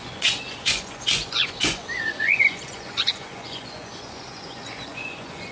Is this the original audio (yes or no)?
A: no